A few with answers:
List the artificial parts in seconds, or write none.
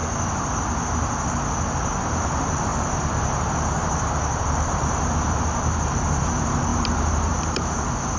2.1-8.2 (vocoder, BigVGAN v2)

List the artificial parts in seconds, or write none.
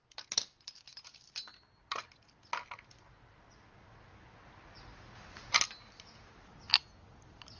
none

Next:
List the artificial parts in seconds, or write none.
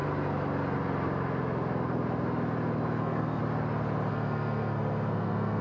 3.0-3.4 (codec, SNAC); 4.1-5.6